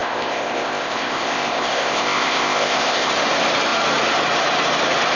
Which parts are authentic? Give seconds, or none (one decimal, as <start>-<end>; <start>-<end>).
3.1-5.2